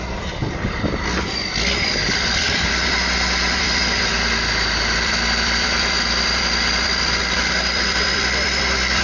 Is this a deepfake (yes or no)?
yes